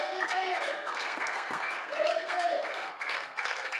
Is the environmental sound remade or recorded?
remade